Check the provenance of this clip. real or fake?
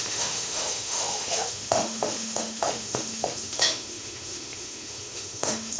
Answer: fake